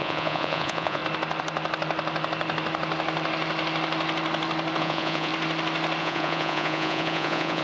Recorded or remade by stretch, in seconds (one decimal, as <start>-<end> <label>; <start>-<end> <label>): 0.0-1.0 remade; 1.0-4.8 recorded; 4.8-5.3 remade; 5.3-6.0 recorded; 6.0-7.6 remade